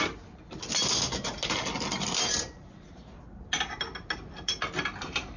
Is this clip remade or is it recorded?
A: recorded